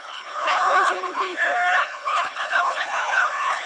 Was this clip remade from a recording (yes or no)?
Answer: yes